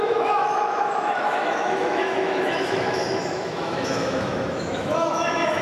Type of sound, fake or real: fake